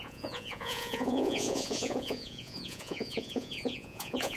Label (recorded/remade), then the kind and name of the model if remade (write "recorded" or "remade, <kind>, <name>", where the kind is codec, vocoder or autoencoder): remade, vocoder, Vocos